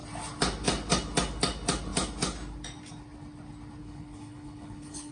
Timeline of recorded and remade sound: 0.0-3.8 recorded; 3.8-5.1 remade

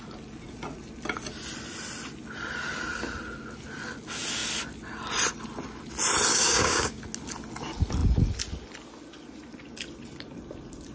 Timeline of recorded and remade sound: 0.0-6.3 recorded; 6.3-7.0 remade; 7.0-10.9 recorded

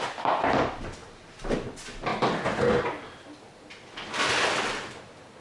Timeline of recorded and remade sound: 0.0-1.0 recorded; 1.0-1.7 remade; 1.7-5.4 recorded

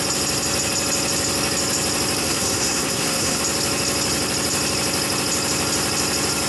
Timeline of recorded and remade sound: 0.0-2.2 recorded; 2.2-3.4 remade; 3.4-6.5 recorded

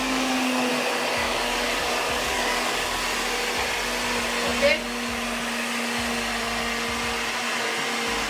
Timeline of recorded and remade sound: 0.0-0.7 remade; 0.7-1.2 recorded; 1.2-3.0 remade; 3.0-8.3 recorded